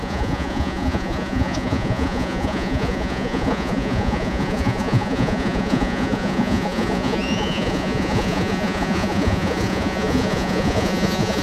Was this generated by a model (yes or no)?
yes